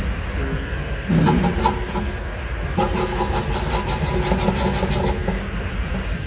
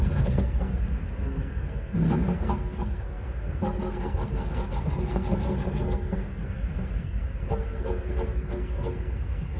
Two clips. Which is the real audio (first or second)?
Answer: first